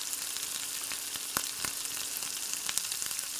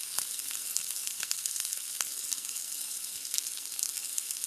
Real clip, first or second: first